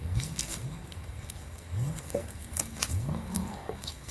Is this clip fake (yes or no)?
yes